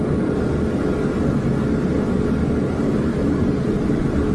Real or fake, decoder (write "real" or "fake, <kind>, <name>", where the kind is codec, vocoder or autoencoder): real